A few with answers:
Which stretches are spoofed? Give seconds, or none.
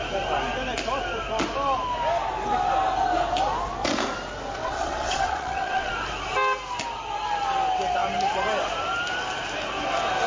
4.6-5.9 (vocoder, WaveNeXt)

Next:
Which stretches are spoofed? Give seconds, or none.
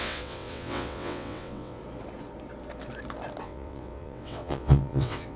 0.0-1.8 (vocoder, WaveNeXt); 3.4-5.4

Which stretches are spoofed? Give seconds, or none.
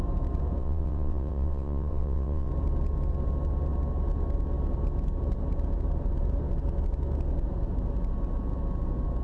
0.6-2.5 (vocoder, WaveNeXt)